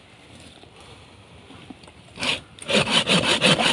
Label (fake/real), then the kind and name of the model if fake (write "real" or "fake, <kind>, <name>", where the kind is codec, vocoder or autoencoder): real